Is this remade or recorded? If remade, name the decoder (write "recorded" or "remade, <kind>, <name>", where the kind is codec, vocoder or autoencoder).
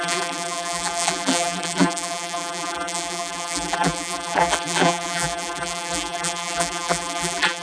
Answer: remade, vocoder, BigVGAN v2